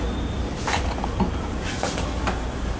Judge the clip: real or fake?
real